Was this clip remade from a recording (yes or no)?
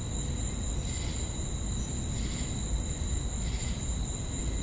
no